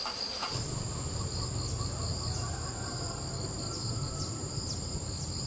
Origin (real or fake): real